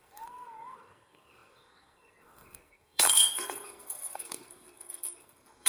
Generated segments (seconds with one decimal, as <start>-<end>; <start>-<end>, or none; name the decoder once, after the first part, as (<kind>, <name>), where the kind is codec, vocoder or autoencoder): 0.0-5.7 (codec, SNAC)